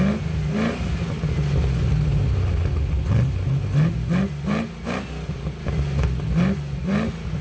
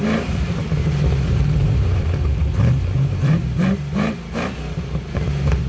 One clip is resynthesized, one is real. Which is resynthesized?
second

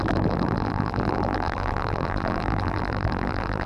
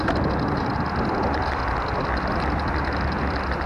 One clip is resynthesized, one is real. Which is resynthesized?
first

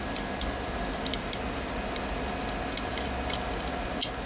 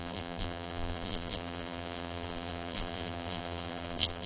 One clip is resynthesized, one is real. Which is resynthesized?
second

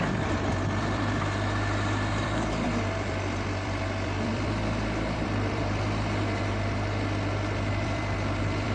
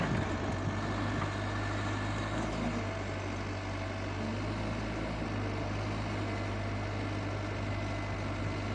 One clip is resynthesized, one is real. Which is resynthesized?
first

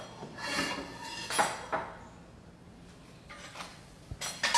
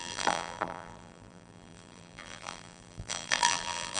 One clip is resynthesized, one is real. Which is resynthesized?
second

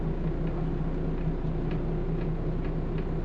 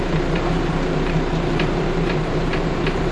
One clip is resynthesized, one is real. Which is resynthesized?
second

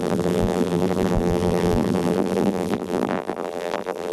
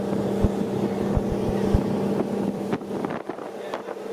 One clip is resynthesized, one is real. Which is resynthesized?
first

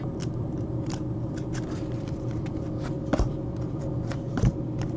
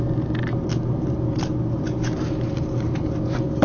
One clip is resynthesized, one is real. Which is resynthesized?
first